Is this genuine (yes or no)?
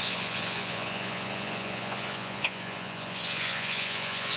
no